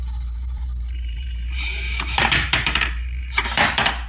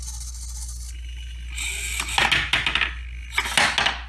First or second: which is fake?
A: first